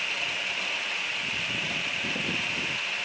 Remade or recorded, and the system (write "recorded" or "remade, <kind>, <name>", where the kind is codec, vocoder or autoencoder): remade, vocoder, BigVGAN v2